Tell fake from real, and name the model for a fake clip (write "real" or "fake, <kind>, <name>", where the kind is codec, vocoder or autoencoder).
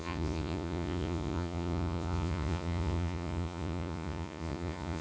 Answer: fake, vocoder, Vocos